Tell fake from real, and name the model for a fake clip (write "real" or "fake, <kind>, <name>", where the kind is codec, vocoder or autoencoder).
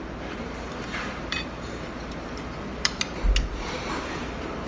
fake, vocoder, BigVGAN v2